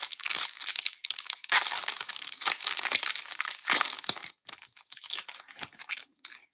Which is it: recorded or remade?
remade